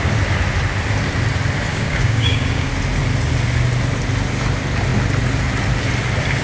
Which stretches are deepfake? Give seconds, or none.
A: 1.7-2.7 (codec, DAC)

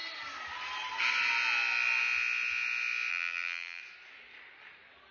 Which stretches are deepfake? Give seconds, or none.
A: 3.1-3.8 (vocoder, BigVGAN v2)

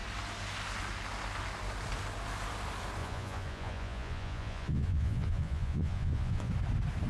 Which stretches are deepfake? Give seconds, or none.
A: 3.0-6.5 (vocoder, Vocos)

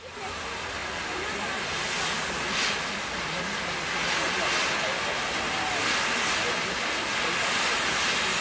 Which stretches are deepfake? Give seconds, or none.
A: none

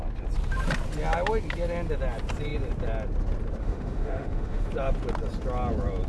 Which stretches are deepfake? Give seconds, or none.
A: 3.6-4.7 (autoencoder, DAC-VAE)